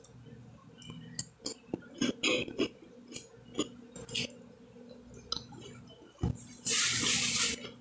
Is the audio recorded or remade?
recorded